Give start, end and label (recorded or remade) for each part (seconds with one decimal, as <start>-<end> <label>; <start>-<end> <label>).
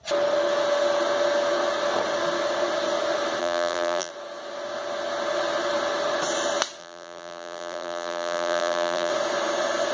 0.0-3.4 recorded; 3.4-4.1 remade; 4.1-6.8 recorded; 6.8-9.1 remade; 9.1-9.9 recorded